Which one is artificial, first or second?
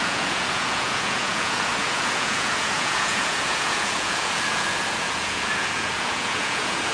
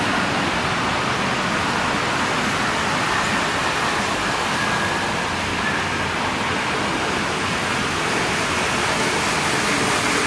first